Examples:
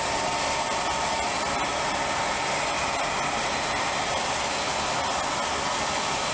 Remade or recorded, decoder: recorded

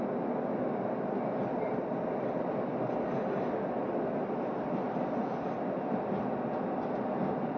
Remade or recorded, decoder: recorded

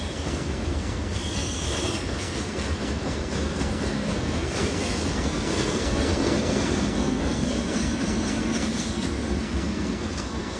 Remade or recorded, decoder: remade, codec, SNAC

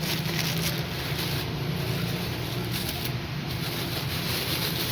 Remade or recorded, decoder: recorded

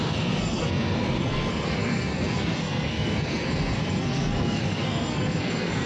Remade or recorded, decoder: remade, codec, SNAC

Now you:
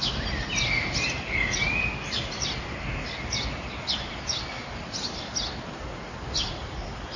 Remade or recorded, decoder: recorded